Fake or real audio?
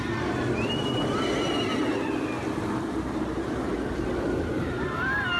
real